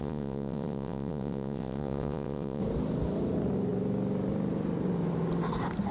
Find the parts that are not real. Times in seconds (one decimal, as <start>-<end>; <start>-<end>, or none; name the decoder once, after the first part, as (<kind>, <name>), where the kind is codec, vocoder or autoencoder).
0.0-2.6 (vocoder, WaveNeXt)